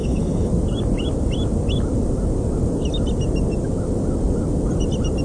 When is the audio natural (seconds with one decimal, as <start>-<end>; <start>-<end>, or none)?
0.5-5.2